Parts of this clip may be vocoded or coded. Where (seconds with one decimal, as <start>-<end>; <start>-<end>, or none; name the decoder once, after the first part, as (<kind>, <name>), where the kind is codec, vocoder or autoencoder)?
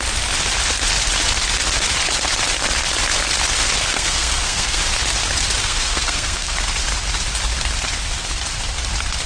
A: 3.9-4.8 (codec, SNAC); 5.6-6.5